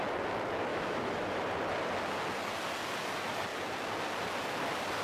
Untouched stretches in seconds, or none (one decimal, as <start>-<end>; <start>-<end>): 0.0-0.7; 1.4-5.0